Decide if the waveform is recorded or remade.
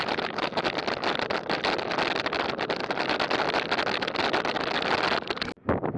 recorded